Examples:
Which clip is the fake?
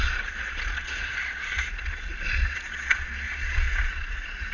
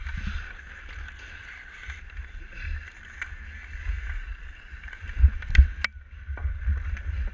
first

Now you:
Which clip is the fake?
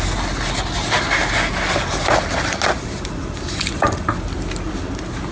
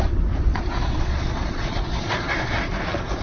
second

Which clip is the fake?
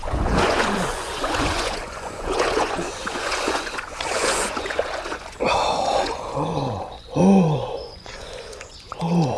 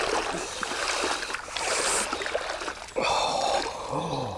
first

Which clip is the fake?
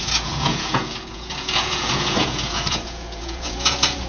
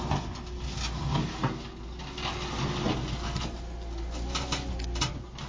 first